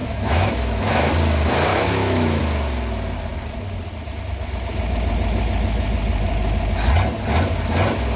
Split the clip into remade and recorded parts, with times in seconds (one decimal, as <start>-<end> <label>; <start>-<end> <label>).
0.0-1.1 remade; 1.1-1.7 recorded; 1.7-2.4 remade; 2.4-8.2 recorded